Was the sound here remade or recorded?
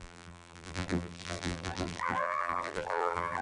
remade